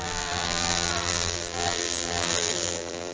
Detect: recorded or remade remade